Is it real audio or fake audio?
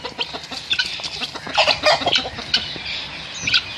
real